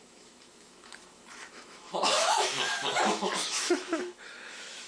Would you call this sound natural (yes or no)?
no